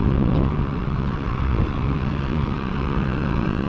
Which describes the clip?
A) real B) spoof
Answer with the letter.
B